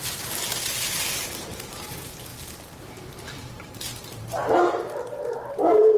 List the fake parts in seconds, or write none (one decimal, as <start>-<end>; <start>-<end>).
0.0-6.0